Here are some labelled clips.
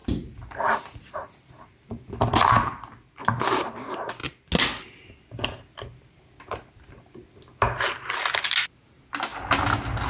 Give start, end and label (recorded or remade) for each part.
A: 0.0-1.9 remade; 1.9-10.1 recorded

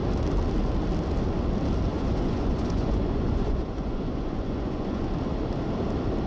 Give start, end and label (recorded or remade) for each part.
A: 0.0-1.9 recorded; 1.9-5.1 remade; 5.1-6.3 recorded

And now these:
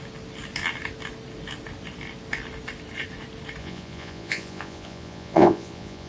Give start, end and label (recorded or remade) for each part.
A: 0.0-3.6 recorded; 3.6-6.1 remade